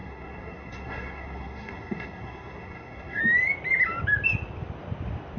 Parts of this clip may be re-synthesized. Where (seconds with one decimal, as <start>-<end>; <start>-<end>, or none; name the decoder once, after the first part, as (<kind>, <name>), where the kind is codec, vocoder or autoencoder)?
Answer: 0.0-3.2 (codec, SNAC)